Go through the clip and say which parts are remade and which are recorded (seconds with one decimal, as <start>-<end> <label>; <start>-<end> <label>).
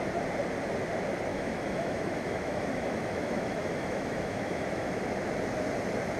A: 0.0-1.3 recorded; 1.3-5.0 remade; 5.0-6.2 recorded